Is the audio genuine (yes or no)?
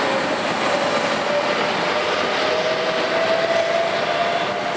yes